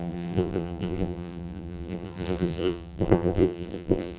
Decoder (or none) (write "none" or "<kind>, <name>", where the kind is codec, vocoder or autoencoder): vocoder, BigVGAN v2